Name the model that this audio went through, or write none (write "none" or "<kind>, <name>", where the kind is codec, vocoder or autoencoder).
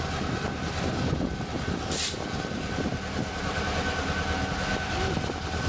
none